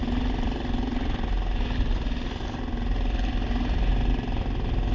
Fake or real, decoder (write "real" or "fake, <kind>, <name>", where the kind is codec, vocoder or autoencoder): real